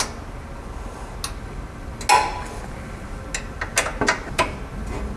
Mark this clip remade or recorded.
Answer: recorded